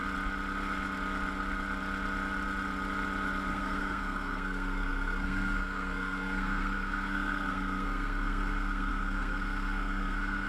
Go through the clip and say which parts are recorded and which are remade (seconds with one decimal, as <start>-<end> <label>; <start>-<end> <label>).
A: 0.0-3.5 recorded; 3.5-10.5 remade